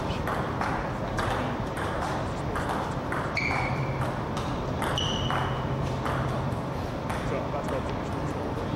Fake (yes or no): yes